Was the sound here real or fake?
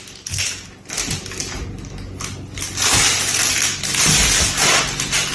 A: real